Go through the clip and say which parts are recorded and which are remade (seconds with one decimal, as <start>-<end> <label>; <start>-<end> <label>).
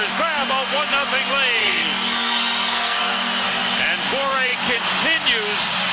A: 0.0-1.6 recorded; 1.6-3.3 remade; 3.3-5.9 recorded